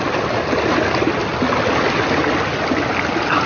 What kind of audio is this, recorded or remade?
recorded